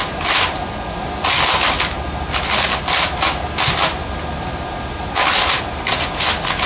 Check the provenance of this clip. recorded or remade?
recorded